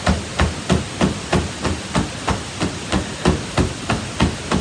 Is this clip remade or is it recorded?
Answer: recorded